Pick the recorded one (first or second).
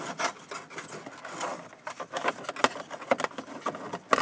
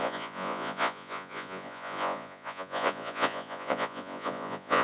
first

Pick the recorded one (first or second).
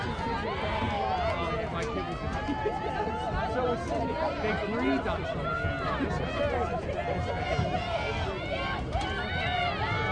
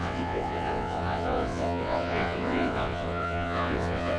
first